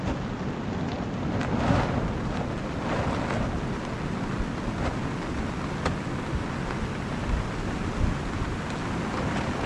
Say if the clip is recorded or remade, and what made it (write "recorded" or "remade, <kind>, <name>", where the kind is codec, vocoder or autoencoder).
recorded